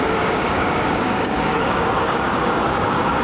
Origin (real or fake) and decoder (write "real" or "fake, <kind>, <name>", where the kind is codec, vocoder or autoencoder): fake, codec, DAC